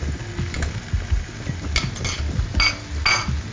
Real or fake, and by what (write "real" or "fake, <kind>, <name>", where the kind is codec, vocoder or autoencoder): real